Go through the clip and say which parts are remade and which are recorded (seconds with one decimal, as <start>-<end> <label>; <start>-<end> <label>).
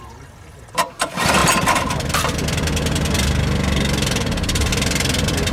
0.0-5.5 recorded